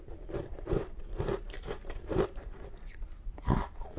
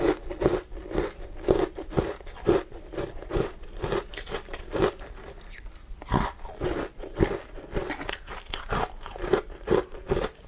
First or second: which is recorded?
second